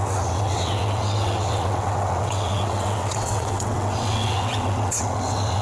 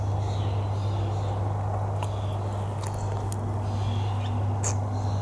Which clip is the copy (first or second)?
first